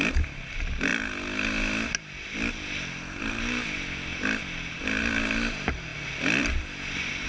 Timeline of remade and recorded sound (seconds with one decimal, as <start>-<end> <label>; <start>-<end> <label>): 0.0-7.3 recorded